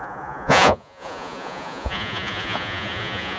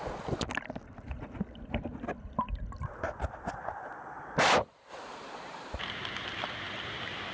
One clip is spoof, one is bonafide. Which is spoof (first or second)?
first